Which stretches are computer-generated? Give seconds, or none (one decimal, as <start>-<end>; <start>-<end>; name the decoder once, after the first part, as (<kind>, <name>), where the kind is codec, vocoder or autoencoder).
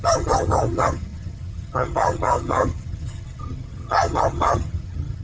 0.0-5.2 (vocoder, HiFi-GAN)